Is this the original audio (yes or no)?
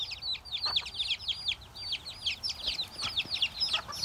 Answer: yes